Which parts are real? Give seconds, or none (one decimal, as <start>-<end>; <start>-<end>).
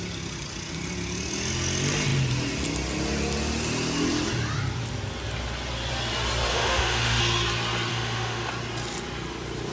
0.0-6.5; 7.2-7.9; 8.5-9.7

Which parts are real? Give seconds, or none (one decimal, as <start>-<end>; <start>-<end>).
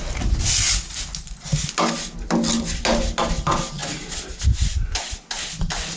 0.0-6.0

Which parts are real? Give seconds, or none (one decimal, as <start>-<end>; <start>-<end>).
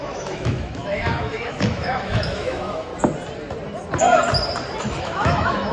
2.9-4.8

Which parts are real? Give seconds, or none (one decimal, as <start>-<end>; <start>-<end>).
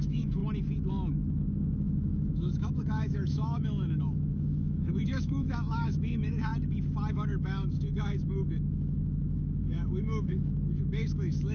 0.4-0.9; 6.5-7.1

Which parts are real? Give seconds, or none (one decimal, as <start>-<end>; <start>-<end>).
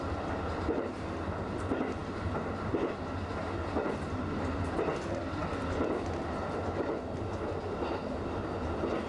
0.0-9.1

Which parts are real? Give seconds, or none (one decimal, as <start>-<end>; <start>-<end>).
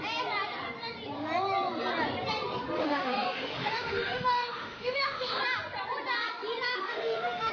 0.0-2.8; 5.4-6.7